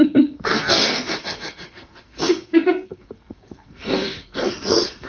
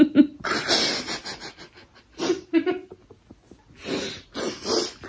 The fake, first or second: first